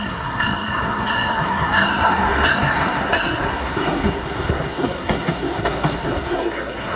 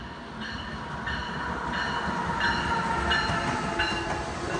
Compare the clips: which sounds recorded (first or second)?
second